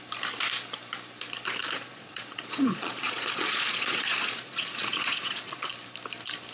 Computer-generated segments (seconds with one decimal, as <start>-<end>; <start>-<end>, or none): 1.9-5.7

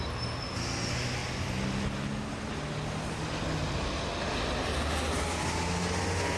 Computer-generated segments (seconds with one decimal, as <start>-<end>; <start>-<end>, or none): none